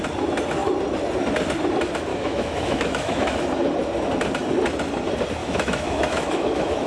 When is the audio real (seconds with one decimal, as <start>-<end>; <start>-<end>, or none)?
0.0-2.1; 3.4-5.4